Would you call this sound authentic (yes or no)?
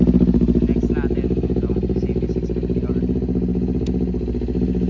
yes